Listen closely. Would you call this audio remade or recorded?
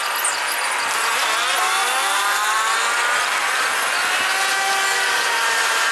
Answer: recorded